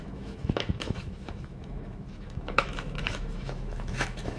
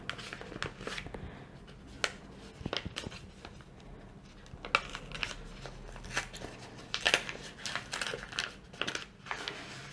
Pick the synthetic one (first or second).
first